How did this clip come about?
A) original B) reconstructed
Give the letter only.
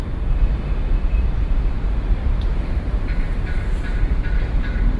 B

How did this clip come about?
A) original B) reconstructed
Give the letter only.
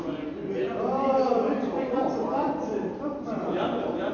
B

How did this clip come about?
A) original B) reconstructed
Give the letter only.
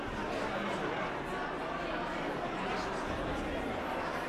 A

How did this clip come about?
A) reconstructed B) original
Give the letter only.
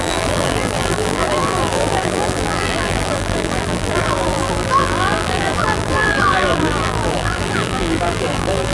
A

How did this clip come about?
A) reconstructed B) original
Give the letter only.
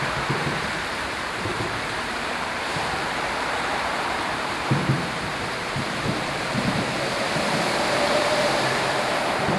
A